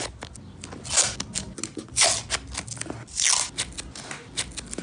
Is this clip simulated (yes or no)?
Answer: no